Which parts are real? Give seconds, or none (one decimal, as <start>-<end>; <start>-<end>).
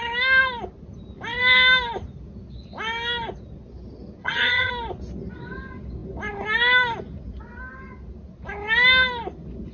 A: 0.0-4.2; 4.7-9.7